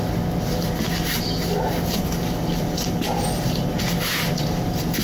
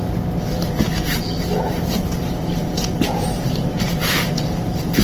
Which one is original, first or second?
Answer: first